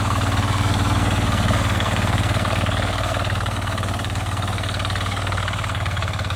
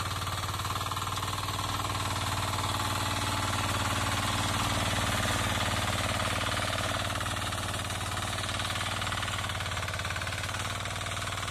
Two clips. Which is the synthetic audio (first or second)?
first